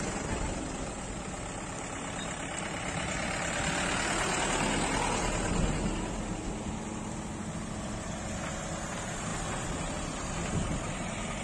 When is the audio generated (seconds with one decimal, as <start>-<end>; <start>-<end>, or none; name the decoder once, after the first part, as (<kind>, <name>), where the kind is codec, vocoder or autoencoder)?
none